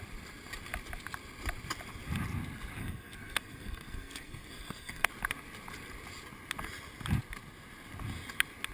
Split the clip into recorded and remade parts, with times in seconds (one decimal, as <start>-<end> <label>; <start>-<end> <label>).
0.0-2.8 recorded; 2.8-5.1 remade; 5.1-8.7 recorded